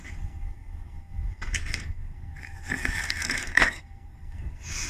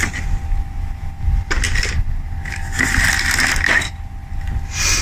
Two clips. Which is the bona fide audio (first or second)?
second